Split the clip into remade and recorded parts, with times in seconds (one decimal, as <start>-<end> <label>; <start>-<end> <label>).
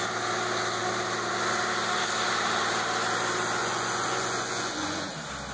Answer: 0.0-3.6 recorded; 3.6-5.1 remade; 5.1-5.5 recorded